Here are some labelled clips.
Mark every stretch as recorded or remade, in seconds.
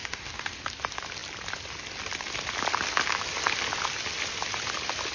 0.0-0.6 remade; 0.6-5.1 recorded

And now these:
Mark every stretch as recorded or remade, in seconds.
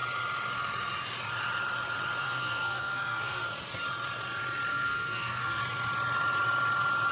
0.0-2.2 recorded; 2.2-3.4 remade; 3.4-4.7 recorded; 4.7-5.6 remade; 5.6-7.1 recorded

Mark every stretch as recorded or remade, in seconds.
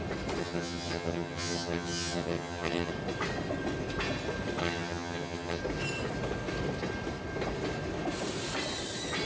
0.0-0.4 recorded; 0.4-2.9 remade; 2.9-4.6 recorded; 4.6-5.6 remade; 5.6-9.3 recorded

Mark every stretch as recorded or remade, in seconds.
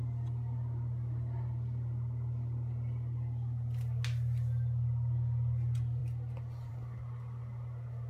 0.0-8.1 recorded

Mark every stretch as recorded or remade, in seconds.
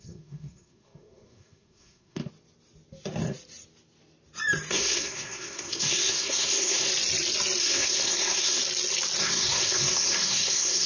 0.0-2.2 remade; 2.2-4.7 recorded; 4.7-6.9 remade; 6.9-7.6 recorded; 7.6-8.6 remade; 8.6-9.2 recorded; 9.2-10.9 remade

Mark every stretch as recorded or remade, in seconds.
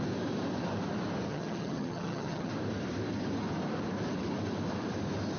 0.0-1.3 recorded; 1.3-2.5 remade; 2.5-5.4 recorded